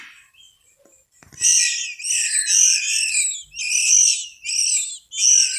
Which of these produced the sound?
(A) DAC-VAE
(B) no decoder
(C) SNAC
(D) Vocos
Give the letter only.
B